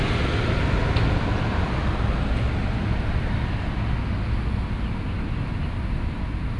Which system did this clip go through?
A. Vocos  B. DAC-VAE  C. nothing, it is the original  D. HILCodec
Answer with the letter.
C